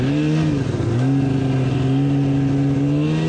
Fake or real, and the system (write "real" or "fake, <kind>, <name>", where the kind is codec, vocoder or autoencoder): real